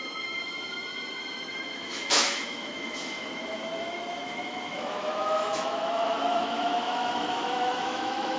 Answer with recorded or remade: remade